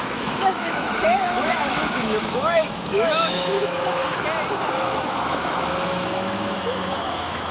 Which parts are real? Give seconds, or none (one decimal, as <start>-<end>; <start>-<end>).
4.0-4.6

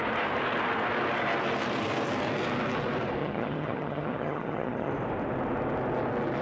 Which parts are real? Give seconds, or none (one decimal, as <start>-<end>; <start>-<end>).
0.0-3.2; 4.9-6.4

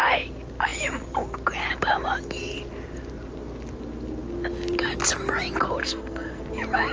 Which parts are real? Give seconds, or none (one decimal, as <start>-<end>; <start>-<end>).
0.0-5.8; 6.4-6.9

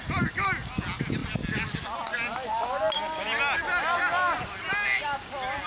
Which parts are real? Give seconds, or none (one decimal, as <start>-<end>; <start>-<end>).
0.0-5.7

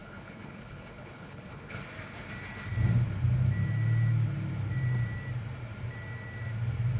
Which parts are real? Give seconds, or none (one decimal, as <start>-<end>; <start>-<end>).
1.8-7.0

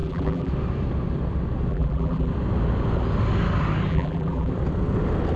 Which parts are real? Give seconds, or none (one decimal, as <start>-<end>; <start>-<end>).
0.5-1.7; 2.3-3.9; 4.5-5.4

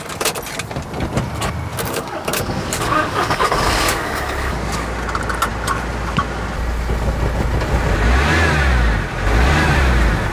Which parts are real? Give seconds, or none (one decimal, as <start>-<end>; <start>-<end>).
0.0-1.7; 4.9-10.3